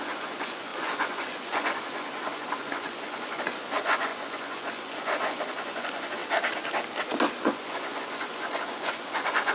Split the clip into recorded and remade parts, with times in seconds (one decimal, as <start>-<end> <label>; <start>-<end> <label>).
0.0-6.2 remade; 6.2-7.4 recorded; 7.4-9.5 remade